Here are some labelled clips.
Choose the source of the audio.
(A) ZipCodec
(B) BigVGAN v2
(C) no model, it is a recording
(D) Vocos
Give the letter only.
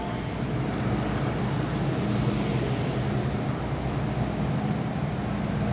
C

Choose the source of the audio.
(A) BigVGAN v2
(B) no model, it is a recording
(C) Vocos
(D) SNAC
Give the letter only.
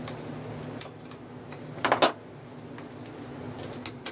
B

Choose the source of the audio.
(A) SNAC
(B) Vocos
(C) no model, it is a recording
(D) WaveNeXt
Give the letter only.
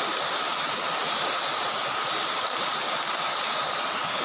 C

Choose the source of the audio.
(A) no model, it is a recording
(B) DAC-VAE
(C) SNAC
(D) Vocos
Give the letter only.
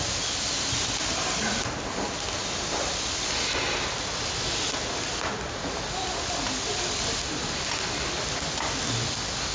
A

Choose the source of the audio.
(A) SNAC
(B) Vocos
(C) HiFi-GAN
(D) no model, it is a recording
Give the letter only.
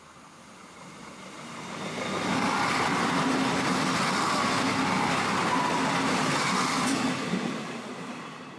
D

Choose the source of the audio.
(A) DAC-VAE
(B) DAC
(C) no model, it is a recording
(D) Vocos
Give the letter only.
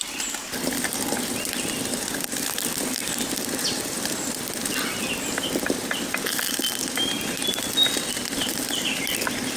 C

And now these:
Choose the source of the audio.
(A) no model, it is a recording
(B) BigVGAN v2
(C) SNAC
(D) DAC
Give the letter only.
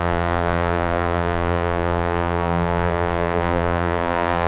B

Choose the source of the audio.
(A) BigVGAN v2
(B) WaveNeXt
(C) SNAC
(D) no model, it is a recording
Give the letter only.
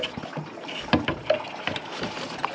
D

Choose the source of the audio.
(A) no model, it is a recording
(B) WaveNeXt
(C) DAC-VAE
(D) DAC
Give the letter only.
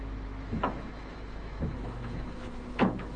C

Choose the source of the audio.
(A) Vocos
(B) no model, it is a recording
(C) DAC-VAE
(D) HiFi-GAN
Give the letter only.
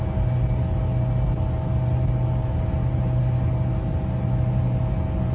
B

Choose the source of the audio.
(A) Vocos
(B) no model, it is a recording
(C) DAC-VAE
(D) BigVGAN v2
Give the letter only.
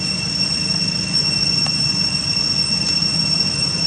B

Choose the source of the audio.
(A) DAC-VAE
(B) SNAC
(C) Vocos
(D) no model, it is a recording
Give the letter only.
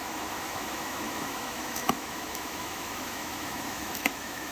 A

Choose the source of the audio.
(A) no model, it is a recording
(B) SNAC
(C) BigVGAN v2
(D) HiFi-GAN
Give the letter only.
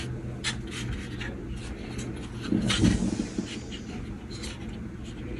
A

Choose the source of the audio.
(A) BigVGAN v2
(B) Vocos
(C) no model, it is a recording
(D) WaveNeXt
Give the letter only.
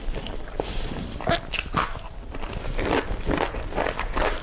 A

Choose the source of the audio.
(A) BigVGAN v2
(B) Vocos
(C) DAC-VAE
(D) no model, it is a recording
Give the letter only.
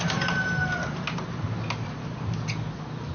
D